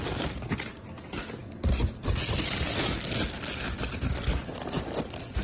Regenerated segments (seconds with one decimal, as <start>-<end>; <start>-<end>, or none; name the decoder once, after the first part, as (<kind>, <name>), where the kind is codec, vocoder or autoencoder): none